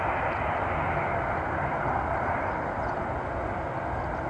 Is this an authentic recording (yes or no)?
yes